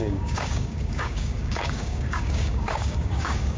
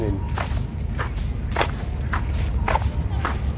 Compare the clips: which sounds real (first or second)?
second